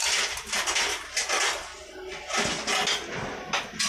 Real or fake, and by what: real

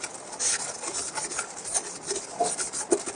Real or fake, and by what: real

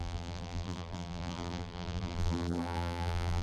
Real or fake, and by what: fake, vocoder, BigVGAN v2